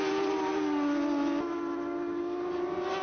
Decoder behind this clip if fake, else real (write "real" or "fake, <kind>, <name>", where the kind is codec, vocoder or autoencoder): real